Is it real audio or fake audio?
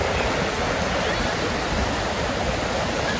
real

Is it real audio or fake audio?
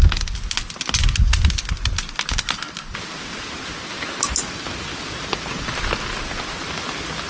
real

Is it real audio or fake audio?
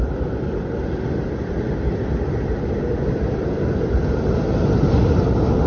real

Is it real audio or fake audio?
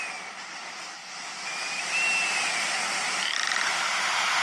real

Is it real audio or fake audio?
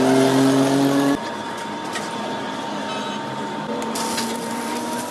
real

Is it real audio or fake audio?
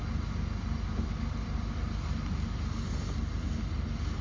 real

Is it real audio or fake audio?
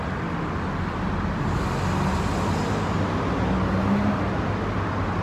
real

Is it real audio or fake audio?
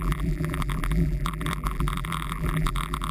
fake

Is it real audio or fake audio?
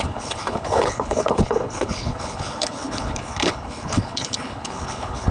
fake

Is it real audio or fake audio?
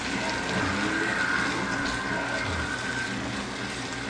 real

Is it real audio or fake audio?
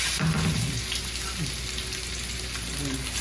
real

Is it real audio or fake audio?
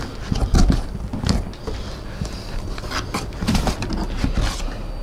real